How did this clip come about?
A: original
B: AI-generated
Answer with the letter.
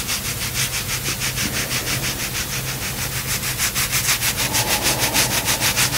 A